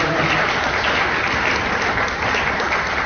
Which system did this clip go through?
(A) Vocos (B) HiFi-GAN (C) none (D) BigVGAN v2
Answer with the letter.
C